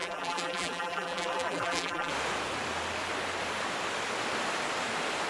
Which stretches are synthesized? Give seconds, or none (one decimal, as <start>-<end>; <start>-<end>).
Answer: 0.0-2.1